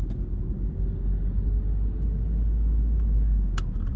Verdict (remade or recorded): recorded